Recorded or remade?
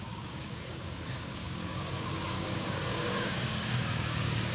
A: remade